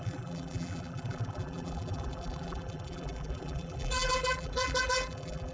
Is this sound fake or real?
fake